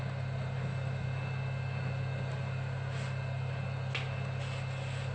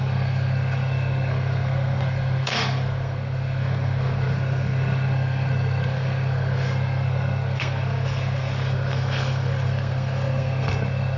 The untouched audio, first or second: first